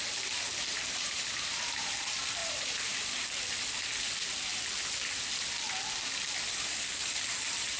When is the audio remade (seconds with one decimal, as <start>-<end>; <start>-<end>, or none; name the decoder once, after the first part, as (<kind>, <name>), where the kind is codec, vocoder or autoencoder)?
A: 0.7-1.9 (vocoder, BigVGAN v2); 2.4-3.4